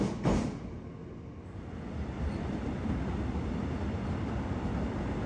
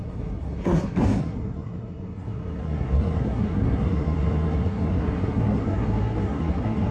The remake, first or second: second